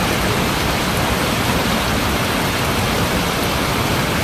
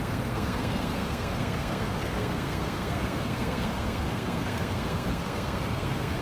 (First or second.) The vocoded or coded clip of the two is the second